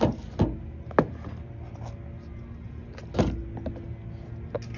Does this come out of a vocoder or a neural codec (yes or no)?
no